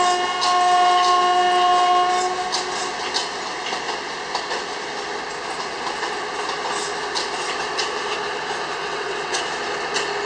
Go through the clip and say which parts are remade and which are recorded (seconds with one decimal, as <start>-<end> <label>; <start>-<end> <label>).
0.0-8.8 recorded; 8.8-9.4 remade; 9.4-10.3 recorded

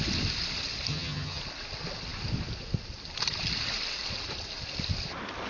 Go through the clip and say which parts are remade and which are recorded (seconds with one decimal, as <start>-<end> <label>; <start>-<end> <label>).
0.0-0.9 recorded; 0.9-1.4 remade; 1.4-5.5 recorded